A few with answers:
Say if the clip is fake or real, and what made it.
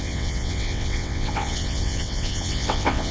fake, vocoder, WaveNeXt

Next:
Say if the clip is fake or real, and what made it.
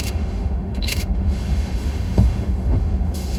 fake, autoencoder, DAC-VAE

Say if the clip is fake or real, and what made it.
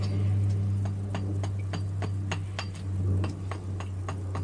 real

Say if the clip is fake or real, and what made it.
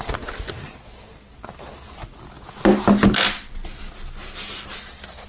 real